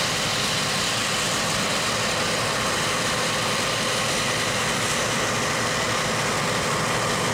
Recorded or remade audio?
recorded